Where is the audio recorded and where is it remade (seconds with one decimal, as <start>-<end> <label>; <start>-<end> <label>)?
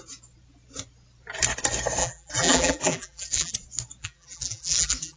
0.0-2.0 recorded; 2.0-3.5 remade; 3.5-4.0 recorded; 4.0-5.2 remade